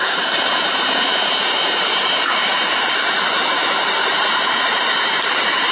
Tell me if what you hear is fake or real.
real